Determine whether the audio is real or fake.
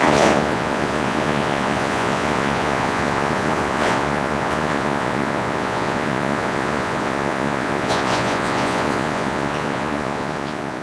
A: fake